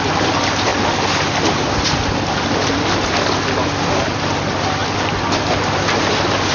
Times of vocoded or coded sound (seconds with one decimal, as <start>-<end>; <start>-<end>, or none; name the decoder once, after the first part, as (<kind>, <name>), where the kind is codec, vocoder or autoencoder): none